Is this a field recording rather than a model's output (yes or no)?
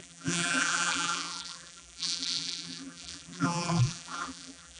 no